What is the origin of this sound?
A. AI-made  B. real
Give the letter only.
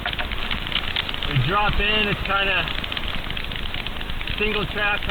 B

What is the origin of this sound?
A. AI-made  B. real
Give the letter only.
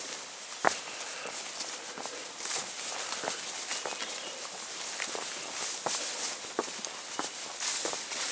B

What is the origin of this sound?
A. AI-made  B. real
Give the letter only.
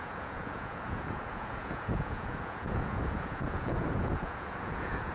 A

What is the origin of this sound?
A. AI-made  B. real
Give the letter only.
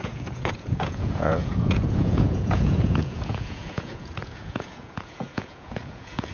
A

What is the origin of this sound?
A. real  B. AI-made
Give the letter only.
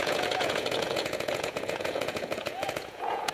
B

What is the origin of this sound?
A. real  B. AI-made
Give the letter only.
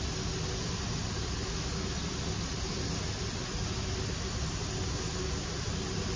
A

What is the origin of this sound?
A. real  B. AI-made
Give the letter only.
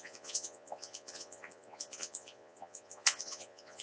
B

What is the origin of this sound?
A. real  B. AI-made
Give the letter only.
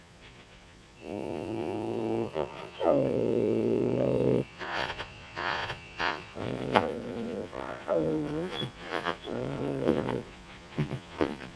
B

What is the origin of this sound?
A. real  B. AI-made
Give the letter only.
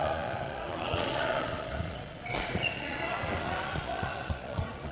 B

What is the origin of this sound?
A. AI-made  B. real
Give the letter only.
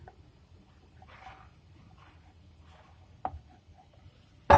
B